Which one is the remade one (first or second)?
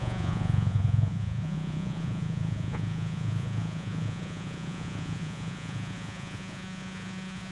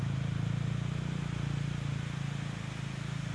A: first